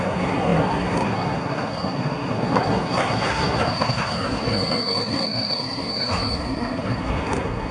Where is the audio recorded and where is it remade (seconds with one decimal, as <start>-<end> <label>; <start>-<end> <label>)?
0.0-7.7 remade